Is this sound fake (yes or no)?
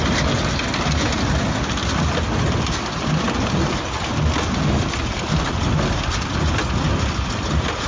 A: no